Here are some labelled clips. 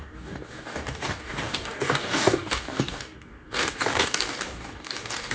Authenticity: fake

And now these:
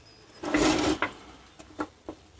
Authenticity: real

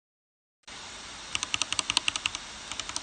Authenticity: real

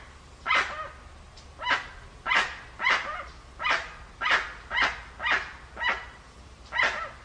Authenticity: real